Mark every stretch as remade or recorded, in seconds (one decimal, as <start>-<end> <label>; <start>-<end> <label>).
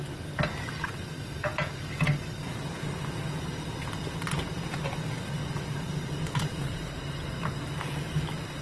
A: 0.0-5.4 recorded; 5.4-7.4 remade; 7.4-8.6 recorded